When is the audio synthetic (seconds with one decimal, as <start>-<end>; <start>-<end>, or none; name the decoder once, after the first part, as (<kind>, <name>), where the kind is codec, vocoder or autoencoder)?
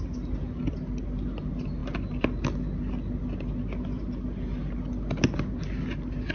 none